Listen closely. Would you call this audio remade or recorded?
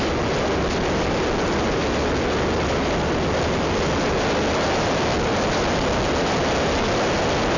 recorded